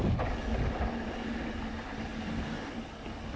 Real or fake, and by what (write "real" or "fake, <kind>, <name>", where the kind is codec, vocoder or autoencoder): real